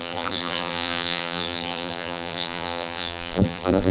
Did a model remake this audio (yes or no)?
yes